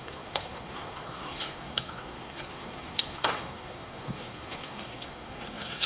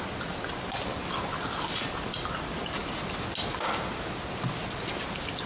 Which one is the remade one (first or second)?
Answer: first